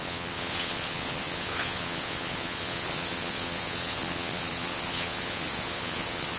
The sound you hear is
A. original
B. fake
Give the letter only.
B